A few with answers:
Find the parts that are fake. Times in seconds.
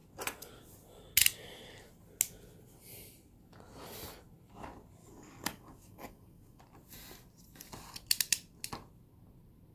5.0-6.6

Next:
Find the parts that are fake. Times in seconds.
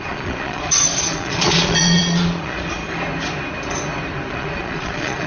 0.0-2.8; 4.3-5.3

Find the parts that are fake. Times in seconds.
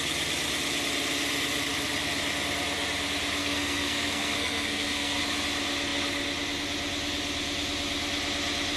3.4-5.2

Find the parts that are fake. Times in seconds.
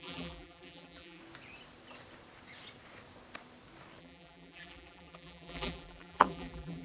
0.0-1.2; 4.0-6.8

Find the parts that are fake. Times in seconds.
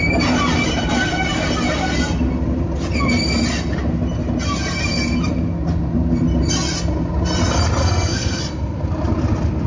7.8-8.4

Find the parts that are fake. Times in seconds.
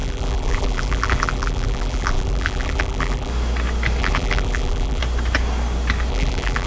0.0-3.3; 4.0-5.0; 6.1-6.7